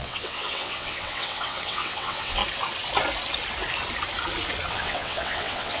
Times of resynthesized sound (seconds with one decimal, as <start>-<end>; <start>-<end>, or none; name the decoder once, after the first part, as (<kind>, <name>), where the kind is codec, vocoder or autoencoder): 0.0-2.4 (vocoder, WaveNeXt); 4.7-5.8